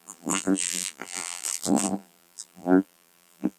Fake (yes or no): yes